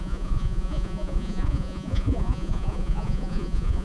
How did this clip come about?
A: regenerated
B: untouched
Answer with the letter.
A